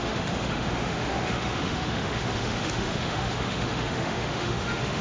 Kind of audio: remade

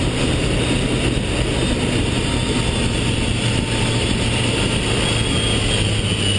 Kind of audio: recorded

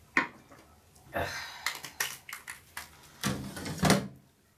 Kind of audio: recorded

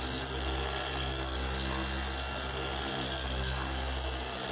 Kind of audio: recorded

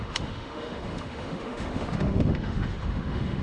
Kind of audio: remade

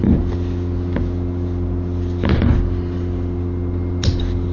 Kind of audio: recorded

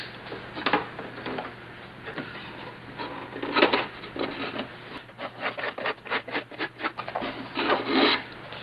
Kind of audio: recorded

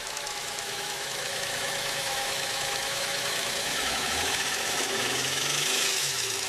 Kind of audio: remade